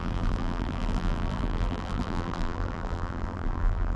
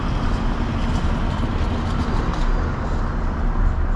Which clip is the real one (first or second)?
second